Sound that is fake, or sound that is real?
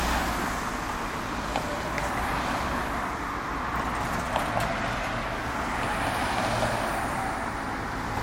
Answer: real